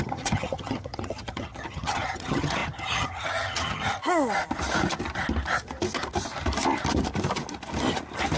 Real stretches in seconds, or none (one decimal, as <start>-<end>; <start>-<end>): 4.0-8.4